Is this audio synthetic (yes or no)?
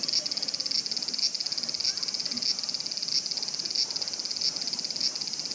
no